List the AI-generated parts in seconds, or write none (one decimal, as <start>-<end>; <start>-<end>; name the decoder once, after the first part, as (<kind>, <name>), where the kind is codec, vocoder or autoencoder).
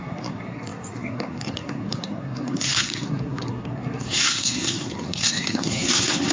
0.0-6.3 (codec, SNAC)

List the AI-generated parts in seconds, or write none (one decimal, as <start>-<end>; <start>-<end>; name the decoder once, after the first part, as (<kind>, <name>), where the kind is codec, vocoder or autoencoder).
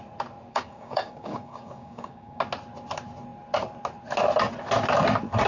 0.5-2.4 (codec, DAC)